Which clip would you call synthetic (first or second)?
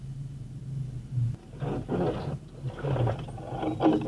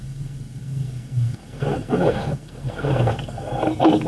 second